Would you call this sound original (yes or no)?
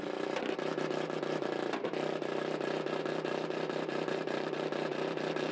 no